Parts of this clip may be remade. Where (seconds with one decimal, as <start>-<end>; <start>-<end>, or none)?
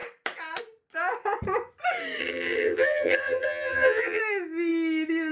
2.2-4.2